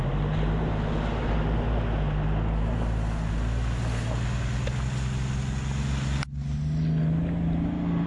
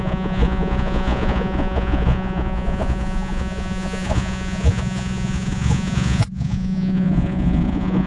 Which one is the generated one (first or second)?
second